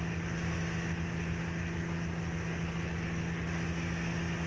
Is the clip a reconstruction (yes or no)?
no